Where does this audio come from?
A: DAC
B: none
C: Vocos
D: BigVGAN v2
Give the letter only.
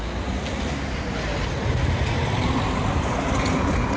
B